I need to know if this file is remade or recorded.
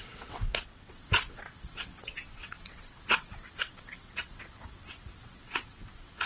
remade